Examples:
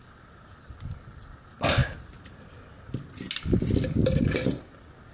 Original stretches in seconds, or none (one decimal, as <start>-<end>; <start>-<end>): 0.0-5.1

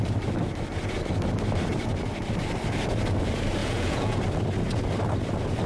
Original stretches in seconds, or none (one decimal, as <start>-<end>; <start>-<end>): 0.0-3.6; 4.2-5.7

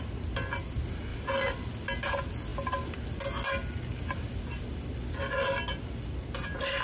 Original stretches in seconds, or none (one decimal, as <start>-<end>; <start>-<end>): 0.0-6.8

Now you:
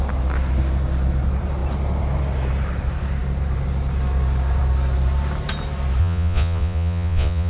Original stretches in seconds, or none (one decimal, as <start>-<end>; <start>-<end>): 0.0-6.0

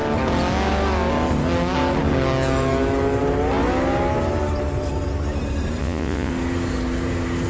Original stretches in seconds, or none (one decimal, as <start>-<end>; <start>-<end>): 0.0-5.8; 6.3-7.5

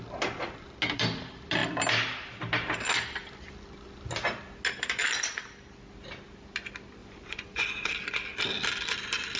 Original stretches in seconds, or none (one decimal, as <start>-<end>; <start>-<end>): 0.0-7.0; 7.9-9.4